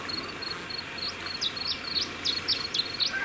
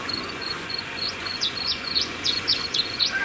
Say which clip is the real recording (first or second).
first